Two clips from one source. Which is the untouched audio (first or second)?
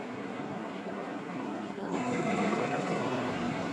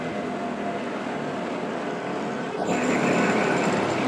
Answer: second